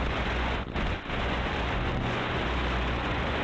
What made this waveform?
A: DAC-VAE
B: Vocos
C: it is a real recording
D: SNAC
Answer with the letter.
B